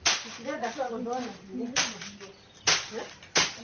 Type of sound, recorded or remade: recorded